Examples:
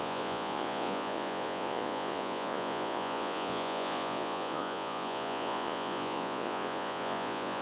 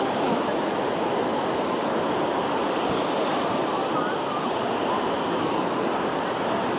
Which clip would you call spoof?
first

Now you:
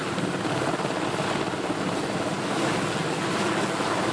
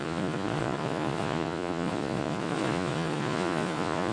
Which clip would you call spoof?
second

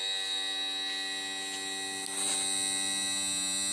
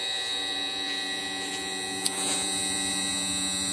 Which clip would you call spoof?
second